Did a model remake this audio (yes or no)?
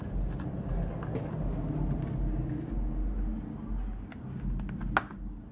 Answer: no